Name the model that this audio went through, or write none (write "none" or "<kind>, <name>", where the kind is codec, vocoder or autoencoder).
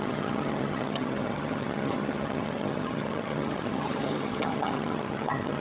vocoder, HiFi-GAN